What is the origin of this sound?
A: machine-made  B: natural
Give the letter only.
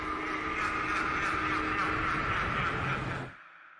B